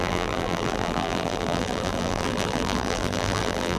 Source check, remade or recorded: remade